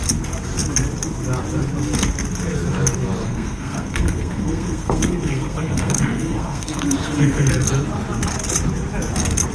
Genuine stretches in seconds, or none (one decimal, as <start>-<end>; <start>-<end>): 0.0-3.2; 7.5-9.5